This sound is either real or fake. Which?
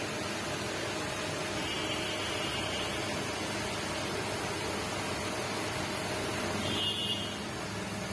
real